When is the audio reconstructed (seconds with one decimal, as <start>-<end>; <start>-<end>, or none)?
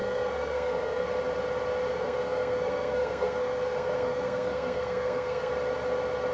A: 0.0-1.1; 1.9-5.5